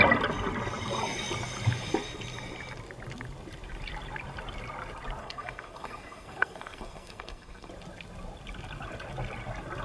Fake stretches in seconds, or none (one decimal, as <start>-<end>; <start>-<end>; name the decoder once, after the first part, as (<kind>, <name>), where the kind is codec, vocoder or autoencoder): 5.2-7.7 (codec, SNAC)